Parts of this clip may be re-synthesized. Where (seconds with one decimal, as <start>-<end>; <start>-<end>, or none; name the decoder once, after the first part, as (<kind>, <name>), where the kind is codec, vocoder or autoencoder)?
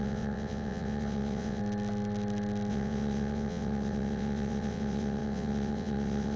0.0-1.6 (vocoder, WaveNeXt); 2.7-6.4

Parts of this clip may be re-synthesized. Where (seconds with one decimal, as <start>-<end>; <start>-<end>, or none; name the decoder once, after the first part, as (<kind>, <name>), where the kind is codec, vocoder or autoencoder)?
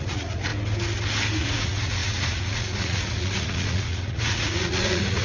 0.0-0.5 (vocoder, Vocos); 1.4-5.2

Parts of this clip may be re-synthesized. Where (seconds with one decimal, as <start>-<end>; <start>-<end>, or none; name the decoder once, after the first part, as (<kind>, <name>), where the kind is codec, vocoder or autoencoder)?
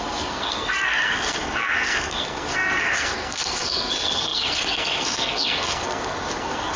0.0-6.8 (codec, SNAC)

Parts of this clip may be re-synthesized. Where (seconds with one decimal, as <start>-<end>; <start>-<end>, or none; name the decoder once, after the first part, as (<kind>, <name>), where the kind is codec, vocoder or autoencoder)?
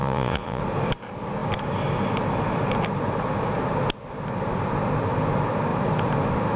0.0-0.6 (vocoder, Vocos)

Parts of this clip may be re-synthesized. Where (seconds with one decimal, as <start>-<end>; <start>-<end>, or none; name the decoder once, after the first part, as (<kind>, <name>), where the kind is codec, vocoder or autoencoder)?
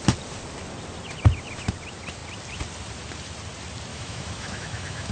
3.9-5.1 (autoencoder, DAC-VAE)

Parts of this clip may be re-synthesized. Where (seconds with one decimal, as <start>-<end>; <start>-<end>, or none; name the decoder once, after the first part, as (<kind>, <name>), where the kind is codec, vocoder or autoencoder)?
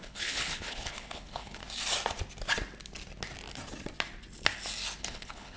0.0-1.6 (codec, HILCodec); 5.0-5.6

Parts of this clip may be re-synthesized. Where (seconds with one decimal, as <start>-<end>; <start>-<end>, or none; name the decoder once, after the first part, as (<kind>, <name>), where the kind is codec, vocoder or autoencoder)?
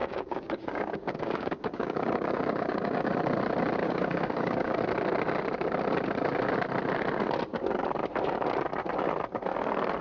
0.0-3.1 (codec, DAC); 3.8-4.8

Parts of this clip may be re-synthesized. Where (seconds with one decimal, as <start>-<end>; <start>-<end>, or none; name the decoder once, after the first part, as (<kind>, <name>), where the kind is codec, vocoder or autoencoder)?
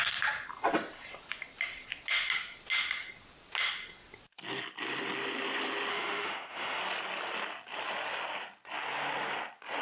5.9-6.8 (autoencoder, DAC-VAE)